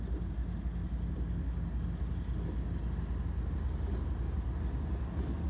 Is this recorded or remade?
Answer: recorded